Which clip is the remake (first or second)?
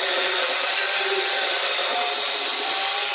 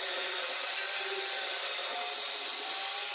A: first